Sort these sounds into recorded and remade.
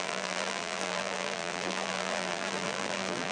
remade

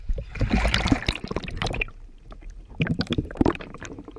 remade